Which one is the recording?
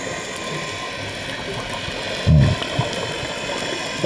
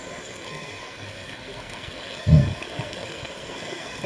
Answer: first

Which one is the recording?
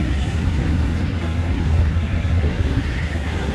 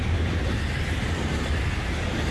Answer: second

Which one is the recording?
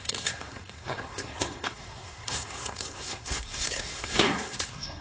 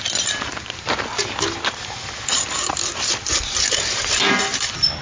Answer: second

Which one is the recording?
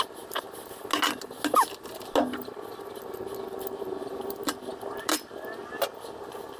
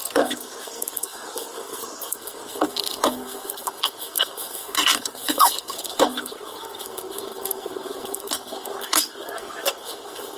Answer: first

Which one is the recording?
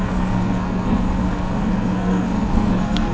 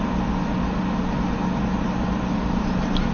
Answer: second